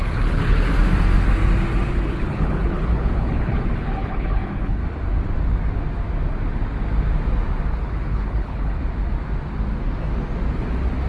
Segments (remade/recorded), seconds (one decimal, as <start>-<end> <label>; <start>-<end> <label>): 0.0-0.7 remade; 0.7-1.9 recorded; 1.9-4.8 remade; 4.8-7.7 recorded; 7.7-8.8 remade; 8.8-11.1 recorded